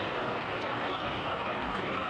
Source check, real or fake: fake